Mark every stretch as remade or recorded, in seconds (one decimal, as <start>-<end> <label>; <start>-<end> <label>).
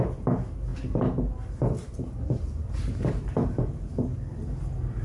0.0-0.7 recorded; 0.7-3.7 remade; 3.7-5.0 recorded